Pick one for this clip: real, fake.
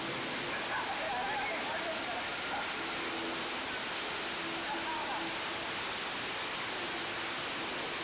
real